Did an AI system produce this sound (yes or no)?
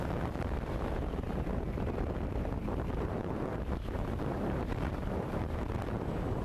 yes